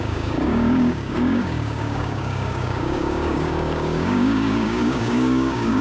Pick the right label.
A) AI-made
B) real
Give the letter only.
A